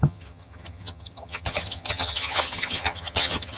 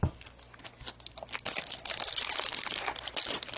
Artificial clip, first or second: first